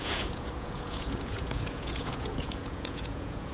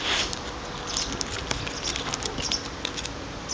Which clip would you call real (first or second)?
second